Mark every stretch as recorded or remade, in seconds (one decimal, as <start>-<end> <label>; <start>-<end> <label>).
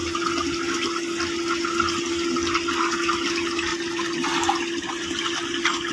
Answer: 0.0-5.9 recorded